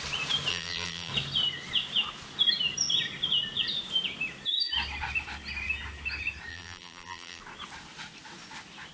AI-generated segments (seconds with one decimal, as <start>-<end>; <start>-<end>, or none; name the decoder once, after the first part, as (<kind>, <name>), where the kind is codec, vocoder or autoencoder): 0.5-1.1 (vocoder, BigVGAN v2); 6.5-7.4

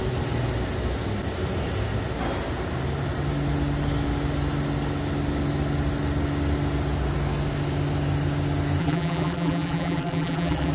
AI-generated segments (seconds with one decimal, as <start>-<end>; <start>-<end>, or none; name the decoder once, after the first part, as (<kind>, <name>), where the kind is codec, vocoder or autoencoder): 8.8-10.7 (vocoder, BigVGAN v2)

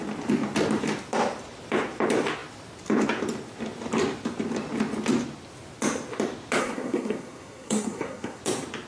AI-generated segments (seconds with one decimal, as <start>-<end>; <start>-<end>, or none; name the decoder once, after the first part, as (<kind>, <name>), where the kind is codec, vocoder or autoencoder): 6.6-8.4 (codec, SNAC)

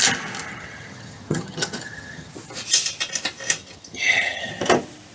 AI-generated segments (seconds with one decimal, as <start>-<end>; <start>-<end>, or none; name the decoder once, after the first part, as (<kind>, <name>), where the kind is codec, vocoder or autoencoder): 0.5-2.3 (vocoder, HiFi-GAN); 3.6-4.5